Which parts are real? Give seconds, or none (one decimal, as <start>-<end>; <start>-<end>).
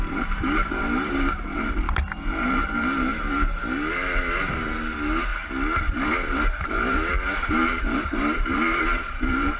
5.3-5.9